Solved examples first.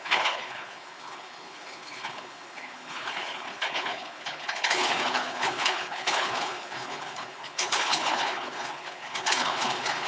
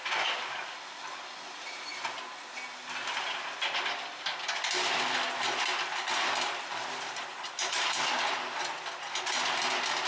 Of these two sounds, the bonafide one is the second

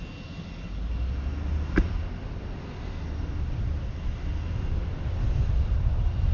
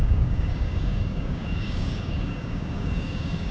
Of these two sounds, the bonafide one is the first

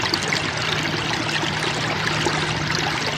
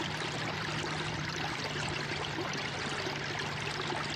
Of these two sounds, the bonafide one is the first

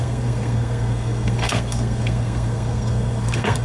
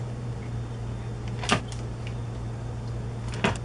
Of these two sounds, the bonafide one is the second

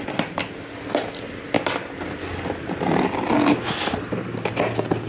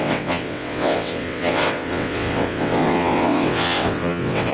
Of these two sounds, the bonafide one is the first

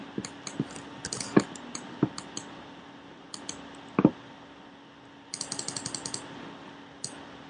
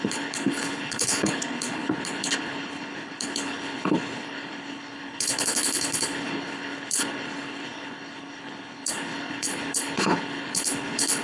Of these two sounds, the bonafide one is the first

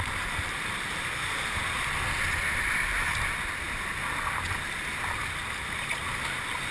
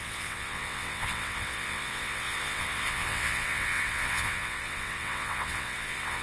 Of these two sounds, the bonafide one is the first